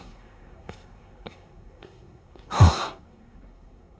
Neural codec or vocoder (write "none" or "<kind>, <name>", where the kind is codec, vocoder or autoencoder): codec, SNAC